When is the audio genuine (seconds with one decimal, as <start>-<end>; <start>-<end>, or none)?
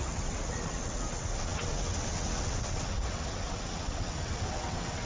none